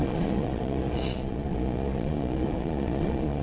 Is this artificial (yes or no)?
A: yes